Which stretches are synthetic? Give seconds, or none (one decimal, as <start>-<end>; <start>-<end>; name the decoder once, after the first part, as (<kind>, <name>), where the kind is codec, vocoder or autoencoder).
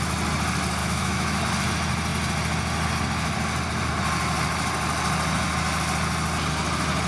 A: 0.8-1.4 (autoencoder, DAC-VAE)